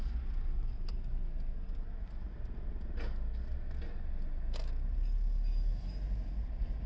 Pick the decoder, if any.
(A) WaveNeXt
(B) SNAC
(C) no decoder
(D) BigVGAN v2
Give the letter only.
C